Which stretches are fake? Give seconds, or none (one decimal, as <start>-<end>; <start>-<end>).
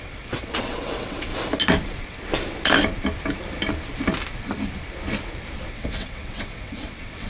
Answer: 0.0-1.3; 5.7-7.3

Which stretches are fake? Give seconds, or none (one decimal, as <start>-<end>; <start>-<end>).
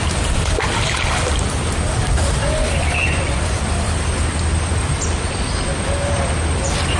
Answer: 3.0-3.6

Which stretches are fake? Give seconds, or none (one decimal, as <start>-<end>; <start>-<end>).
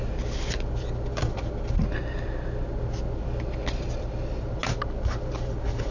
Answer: none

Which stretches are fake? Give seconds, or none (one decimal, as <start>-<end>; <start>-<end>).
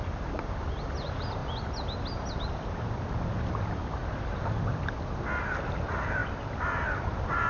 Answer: none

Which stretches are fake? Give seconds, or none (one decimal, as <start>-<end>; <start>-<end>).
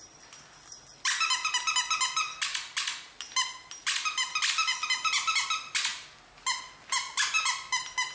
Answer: none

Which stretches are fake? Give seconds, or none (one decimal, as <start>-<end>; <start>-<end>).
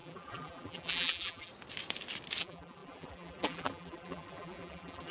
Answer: 0.0-1.5; 2.4-5.1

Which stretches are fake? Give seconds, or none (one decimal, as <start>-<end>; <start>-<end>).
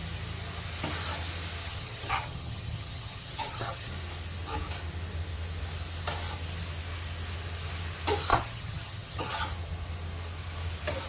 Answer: 1.6-3.9; 8.3-9.4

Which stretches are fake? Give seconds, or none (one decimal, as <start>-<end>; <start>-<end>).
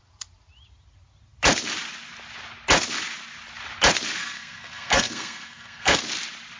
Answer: 4.2-6.0